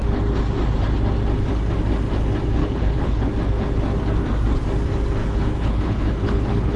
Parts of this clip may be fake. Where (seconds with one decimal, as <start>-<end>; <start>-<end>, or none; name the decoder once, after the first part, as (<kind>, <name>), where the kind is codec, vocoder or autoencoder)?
2.6-3.3 (codec, HILCodec); 5.2-6.8